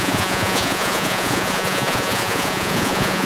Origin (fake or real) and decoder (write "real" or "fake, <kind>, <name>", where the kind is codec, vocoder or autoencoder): fake, vocoder, Vocos